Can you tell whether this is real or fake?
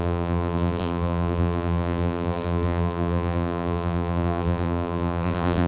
fake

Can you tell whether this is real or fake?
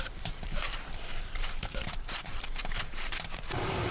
fake